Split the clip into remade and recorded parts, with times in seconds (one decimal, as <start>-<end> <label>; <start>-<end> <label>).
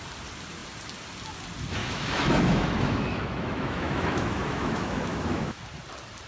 0.0-1.8 recorded; 1.8-5.6 remade; 5.6-6.3 recorded